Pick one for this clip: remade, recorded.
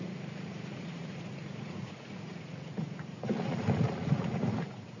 remade